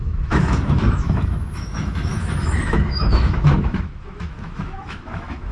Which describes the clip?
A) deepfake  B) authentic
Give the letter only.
A